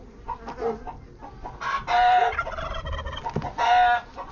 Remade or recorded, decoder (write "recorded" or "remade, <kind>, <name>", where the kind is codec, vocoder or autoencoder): recorded